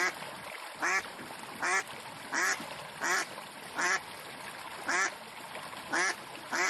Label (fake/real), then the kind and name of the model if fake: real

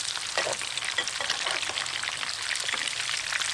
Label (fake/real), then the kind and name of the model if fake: real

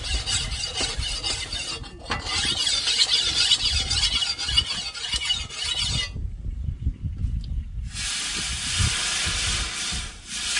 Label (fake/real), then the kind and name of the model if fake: real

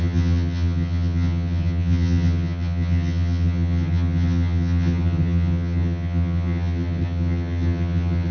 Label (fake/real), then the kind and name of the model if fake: fake, vocoder, HiFi-GAN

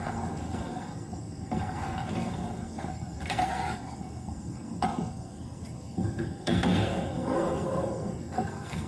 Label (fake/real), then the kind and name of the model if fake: fake, codec, SNAC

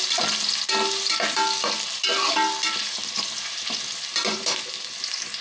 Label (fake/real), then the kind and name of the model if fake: real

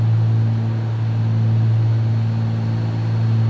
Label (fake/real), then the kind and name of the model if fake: real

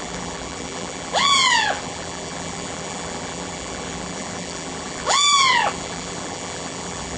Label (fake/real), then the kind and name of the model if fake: fake, vocoder, BigVGAN v2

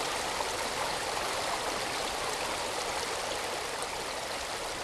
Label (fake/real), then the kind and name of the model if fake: real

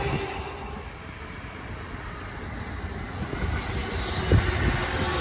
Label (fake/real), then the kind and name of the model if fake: real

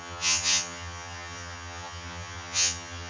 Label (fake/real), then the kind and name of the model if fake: fake, vocoder, HiFi-GAN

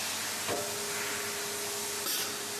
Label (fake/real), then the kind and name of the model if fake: real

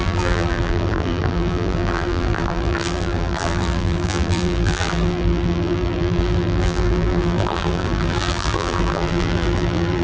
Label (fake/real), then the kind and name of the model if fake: fake, vocoder, BigVGAN v2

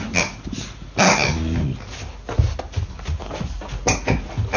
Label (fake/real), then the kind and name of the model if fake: real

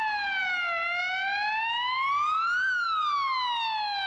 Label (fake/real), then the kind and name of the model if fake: real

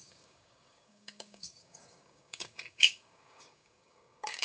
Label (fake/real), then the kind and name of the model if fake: fake, codec, DAC